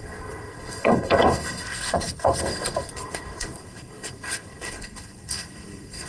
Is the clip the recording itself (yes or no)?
no